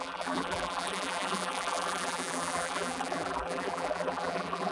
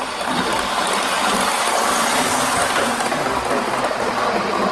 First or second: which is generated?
first